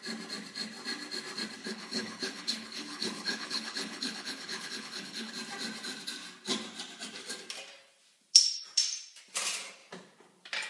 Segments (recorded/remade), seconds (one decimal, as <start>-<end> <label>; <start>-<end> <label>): 0.0-1.6 recorded; 1.6-5.3 remade; 5.3-10.7 recorded